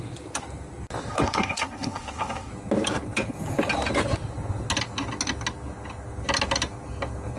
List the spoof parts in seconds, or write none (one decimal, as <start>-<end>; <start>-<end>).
1.1-2.5